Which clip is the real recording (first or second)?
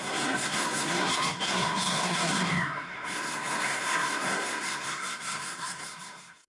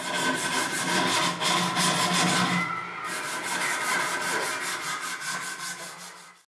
second